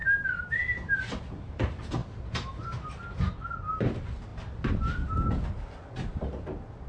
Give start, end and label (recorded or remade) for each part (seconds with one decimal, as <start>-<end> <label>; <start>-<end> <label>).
0.0-6.9 recorded